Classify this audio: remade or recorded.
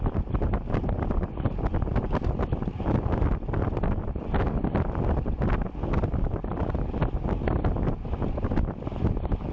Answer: recorded